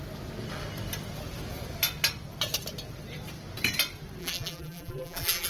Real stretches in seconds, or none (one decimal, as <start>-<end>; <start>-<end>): 0.0-4.2